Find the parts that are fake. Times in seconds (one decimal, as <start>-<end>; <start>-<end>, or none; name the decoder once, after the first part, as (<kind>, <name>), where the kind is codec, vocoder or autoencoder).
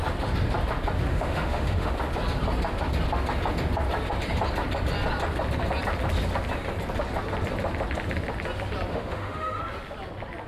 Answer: 1.1-1.9 (autoencoder, DAC-VAE); 8.9-9.6